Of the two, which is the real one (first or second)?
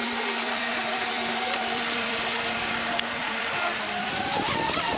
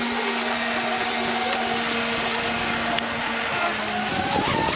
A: second